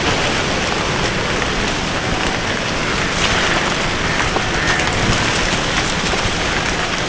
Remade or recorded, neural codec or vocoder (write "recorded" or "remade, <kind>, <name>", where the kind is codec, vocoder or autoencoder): recorded